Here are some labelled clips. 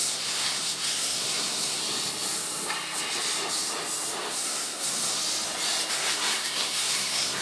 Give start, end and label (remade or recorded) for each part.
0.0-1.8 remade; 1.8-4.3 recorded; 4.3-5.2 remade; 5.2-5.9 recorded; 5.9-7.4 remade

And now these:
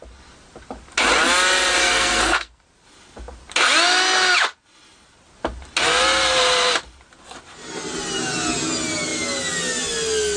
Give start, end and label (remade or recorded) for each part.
0.0-1.8 recorded; 1.8-2.6 remade; 2.6-10.4 recorded

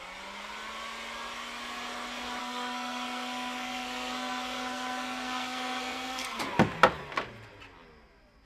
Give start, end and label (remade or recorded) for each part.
0.0-2.4 recorded; 2.4-6.4 remade; 6.4-8.5 recorded

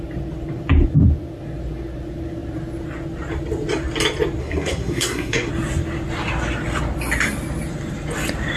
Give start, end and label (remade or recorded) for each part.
0.0-4.4 recorded; 4.4-5.5 remade; 5.5-8.6 recorded

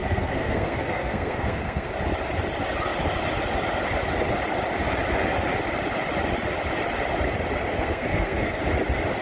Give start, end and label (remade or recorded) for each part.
0.0-1.9 remade; 1.9-7.7 recorded; 7.7-8.6 remade; 8.6-9.2 recorded

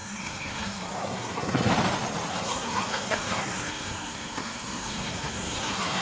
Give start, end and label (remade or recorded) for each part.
0.0-1.7 remade; 1.7-2.3 recorded; 2.3-6.0 remade

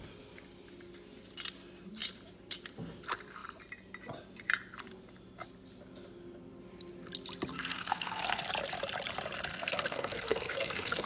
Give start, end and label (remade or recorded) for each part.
0.0-7.5 recorded; 7.5-8.4 remade; 8.4-9.5 recorded; 9.5-11.1 remade

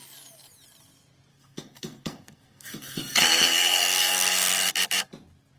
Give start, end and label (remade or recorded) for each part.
0.0-1.3 recorded; 1.3-4.7 remade; 4.7-5.6 recorded